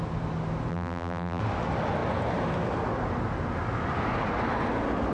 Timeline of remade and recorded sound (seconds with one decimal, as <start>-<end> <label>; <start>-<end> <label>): 0.0-0.7 recorded; 0.7-1.4 remade; 1.4-5.1 recorded